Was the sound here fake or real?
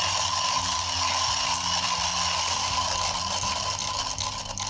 real